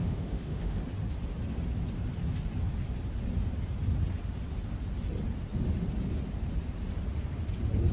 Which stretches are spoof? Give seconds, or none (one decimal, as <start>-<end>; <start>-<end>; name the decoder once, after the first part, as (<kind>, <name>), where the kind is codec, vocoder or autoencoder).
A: 0.0-0.8 (autoencoder, DAC-VAE)